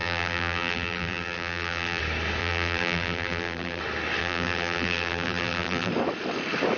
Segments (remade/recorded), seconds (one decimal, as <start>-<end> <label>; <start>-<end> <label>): 0.0-2.0 remade; 2.0-2.4 recorded; 2.4-3.8 remade; 3.8-4.2 recorded; 4.2-5.9 remade; 5.9-6.8 recorded